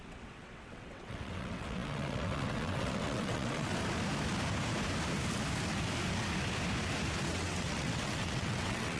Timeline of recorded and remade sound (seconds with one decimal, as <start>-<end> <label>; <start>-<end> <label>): 0.0-3.7 remade; 3.7-7.3 recorded; 7.3-9.0 remade